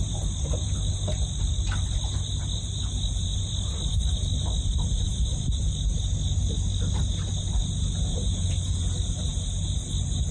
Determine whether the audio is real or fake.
real